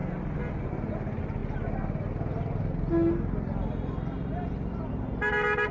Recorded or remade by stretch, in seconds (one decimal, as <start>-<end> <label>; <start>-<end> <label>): 0.0-5.7 recorded